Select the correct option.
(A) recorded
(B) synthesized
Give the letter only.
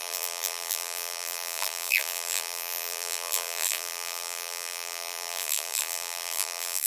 B